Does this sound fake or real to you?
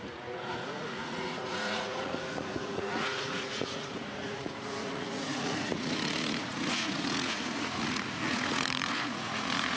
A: fake